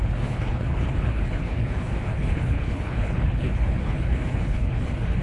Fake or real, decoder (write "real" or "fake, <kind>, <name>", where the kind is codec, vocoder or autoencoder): fake, codec, HILCodec